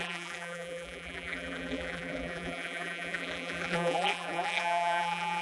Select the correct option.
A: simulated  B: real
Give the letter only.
A